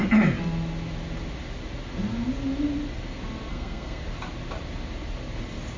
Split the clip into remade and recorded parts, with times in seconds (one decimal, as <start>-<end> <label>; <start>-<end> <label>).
0.0-3.5 recorded; 3.5-4.0 remade; 4.0-5.8 recorded